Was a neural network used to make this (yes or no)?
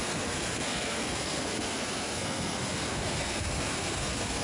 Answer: yes